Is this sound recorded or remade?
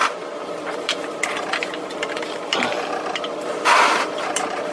remade